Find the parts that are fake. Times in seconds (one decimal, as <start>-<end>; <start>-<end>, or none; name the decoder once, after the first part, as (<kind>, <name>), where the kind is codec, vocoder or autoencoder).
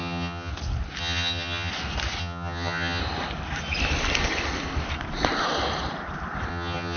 0.0-0.5 (vocoder, HiFi-GAN); 1.0-1.7; 2.2-3.0; 6.5-7.0